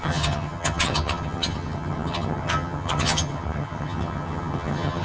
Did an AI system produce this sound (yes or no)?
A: yes